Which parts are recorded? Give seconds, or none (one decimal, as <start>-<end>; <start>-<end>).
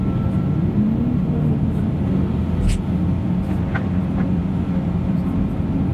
0.0-5.9